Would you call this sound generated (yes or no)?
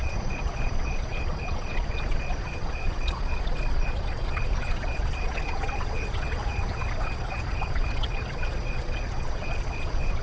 yes